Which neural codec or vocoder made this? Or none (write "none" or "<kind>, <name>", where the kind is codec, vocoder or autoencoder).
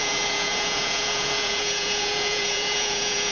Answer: vocoder, Vocos